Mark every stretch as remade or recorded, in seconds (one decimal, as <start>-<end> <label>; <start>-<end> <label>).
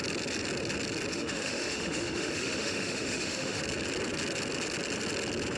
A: 0.0-1.1 recorded; 1.1-3.6 remade; 3.6-5.6 recorded